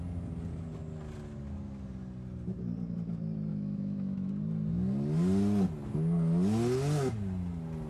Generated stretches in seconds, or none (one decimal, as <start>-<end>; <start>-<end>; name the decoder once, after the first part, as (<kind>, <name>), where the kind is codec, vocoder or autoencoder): 3.5-4.3 (autoencoder, DAC-VAE)